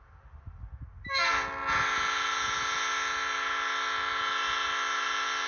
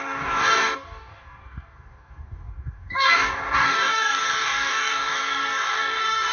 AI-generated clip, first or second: second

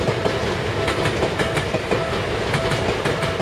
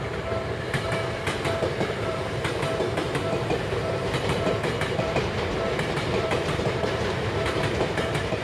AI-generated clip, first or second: second